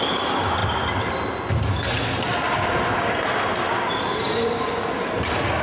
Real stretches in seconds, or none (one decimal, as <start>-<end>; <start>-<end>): 0.0-5.6